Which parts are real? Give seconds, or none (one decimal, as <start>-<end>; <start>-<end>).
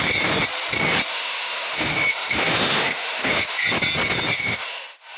0.0-1.1; 3.5-4.4